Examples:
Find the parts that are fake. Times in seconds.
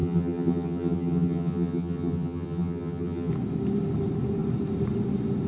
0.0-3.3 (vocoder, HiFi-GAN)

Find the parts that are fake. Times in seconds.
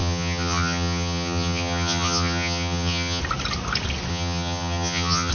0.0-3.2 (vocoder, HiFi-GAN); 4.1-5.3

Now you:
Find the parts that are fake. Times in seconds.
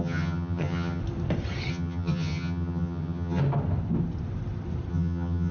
0.0-1.0 (vocoder, HiFi-GAN); 1.7-3.4; 4.9-5.5